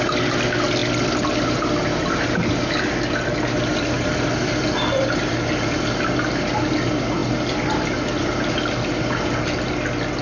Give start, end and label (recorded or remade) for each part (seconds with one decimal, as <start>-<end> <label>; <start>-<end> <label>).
0.0-0.8 recorded; 0.8-2.2 remade; 2.2-10.2 recorded